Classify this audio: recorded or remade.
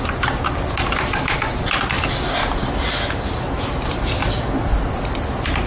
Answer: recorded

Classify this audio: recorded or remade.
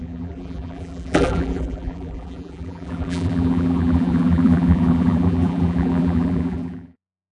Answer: remade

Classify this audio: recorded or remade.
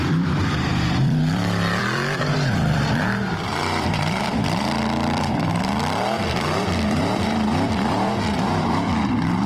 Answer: remade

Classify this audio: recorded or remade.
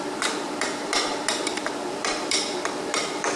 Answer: remade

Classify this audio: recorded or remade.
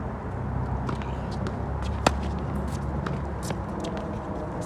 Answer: recorded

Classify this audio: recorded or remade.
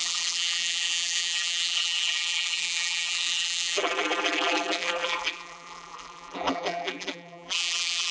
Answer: remade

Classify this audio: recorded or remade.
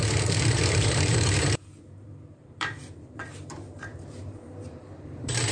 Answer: remade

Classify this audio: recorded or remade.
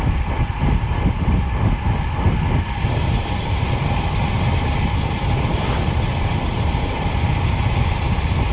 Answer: recorded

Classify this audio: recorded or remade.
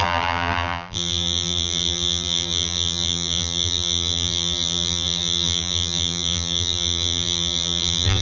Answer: remade